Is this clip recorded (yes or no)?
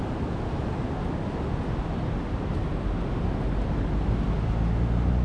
yes